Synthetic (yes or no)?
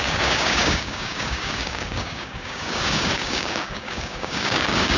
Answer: yes